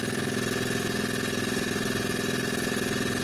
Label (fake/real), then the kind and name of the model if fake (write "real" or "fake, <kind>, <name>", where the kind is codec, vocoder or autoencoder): real